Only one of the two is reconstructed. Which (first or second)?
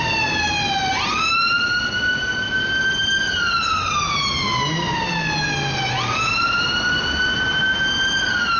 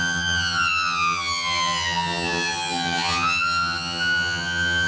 second